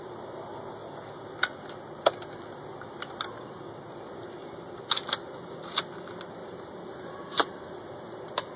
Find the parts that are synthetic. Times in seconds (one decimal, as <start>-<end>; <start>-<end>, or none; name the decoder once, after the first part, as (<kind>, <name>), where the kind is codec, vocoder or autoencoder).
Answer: 6.4-7.2 (vocoder, BigVGAN v2)